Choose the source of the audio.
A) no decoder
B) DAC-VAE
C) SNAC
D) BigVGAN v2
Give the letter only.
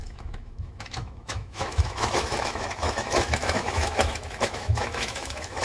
B